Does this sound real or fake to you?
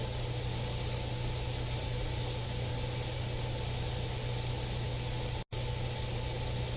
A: real